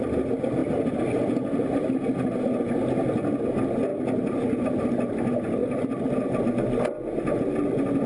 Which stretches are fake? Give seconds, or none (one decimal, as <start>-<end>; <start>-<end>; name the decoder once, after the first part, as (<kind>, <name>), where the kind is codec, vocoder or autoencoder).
none